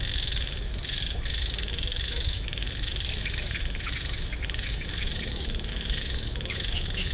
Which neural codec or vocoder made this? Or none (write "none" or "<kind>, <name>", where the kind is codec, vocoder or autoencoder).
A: autoencoder, DAC-VAE